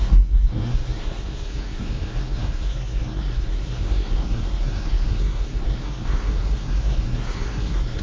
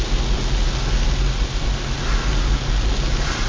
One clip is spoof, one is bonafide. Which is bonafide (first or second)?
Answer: second